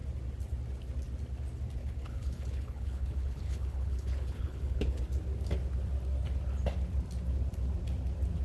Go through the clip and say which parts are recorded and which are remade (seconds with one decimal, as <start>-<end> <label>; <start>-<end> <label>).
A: 0.0-1.8 recorded; 1.8-5.0 remade; 5.0-8.4 recorded